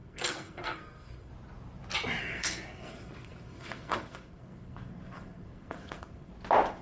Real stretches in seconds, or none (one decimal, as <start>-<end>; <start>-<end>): 1.3-2.2; 6.3-6.8